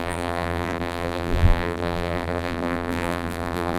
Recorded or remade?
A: remade